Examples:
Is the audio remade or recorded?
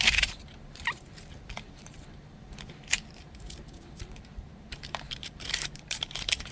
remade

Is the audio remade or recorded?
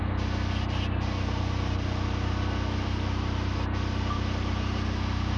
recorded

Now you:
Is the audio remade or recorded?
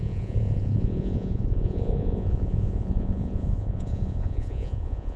remade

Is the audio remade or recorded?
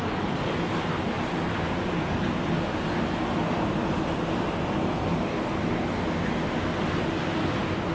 recorded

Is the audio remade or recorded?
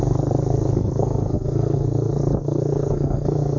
remade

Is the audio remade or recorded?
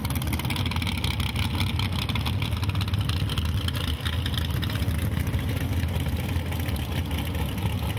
recorded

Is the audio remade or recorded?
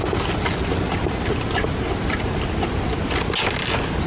recorded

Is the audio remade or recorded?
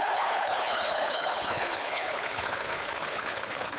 remade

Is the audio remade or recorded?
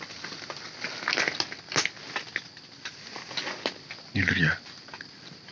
recorded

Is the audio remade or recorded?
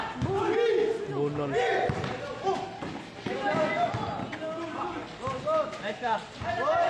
recorded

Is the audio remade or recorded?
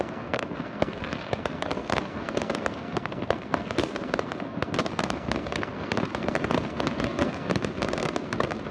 remade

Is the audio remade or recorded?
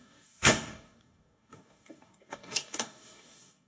remade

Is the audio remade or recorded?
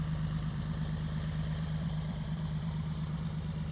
remade